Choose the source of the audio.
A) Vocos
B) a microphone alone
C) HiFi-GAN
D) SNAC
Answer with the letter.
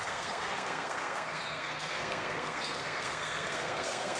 D